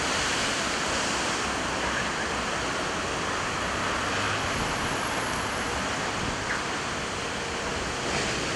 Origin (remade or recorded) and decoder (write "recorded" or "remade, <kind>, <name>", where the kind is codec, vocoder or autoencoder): recorded